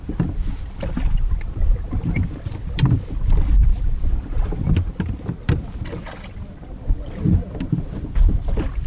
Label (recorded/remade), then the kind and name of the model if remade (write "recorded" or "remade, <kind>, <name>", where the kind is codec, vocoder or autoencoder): recorded